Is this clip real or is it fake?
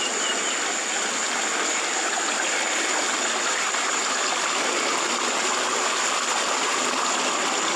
real